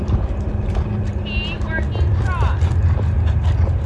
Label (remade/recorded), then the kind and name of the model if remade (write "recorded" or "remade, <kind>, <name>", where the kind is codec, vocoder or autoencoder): recorded